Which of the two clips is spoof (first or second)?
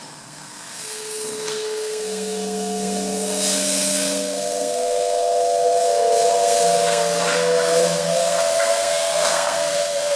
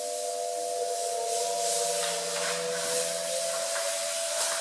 first